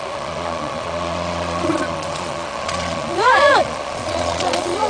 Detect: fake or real fake